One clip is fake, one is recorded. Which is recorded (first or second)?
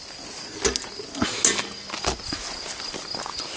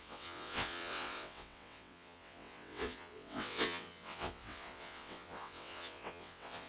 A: first